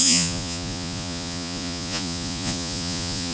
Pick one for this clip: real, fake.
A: fake